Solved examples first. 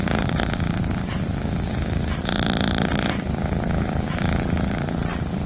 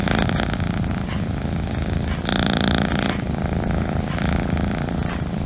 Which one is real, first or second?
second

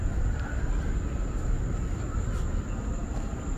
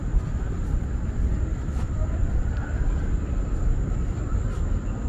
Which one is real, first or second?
first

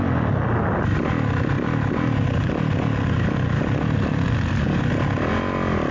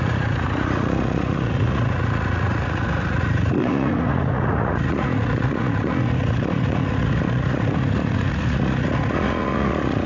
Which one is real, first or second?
first